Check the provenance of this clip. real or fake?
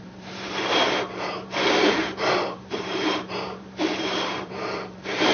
fake